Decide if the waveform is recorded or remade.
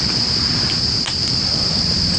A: recorded